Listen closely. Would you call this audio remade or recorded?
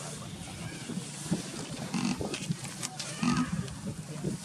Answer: recorded